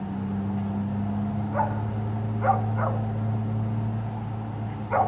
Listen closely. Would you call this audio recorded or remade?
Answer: recorded